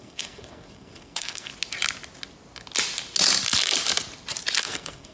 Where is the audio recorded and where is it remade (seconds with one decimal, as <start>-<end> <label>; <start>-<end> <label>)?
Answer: 0.0-1.5 remade; 1.5-4.6 recorded; 4.6-5.1 remade